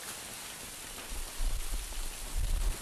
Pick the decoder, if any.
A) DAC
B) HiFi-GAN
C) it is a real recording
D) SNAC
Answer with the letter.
C